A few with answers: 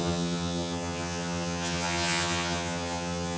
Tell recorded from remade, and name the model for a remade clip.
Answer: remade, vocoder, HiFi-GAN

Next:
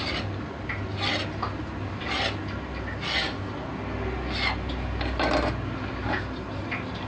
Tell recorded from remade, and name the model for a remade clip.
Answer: recorded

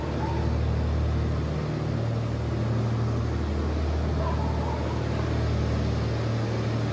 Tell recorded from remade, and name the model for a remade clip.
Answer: recorded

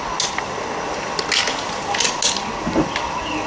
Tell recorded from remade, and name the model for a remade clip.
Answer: recorded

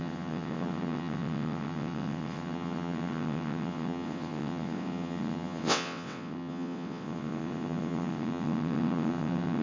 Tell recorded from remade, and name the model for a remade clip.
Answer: remade, vocoder, WaveNeXt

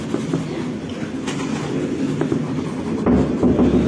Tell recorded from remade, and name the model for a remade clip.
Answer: recorded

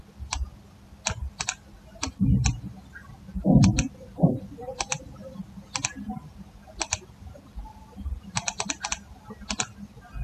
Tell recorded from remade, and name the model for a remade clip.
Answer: recorded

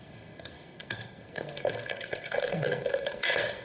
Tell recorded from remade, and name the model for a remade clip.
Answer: remade, codec, SNAC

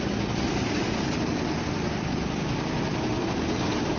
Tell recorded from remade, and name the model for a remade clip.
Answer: recorded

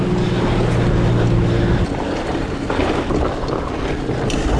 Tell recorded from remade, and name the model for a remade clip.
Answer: recorded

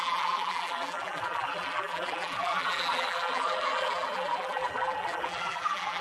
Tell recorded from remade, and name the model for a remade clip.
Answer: remade, vocoder, BigVGAN v2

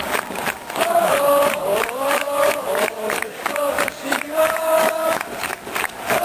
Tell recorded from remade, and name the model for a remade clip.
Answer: remade, codec, DAC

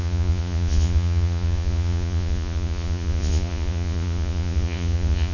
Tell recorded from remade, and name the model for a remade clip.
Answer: remade, vocoder, Vocos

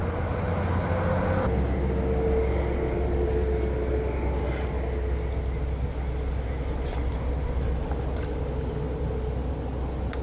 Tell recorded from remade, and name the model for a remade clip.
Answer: recorded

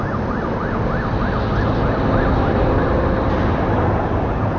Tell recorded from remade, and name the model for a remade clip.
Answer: recorded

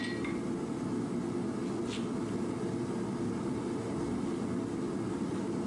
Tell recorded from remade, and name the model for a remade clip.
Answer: recorded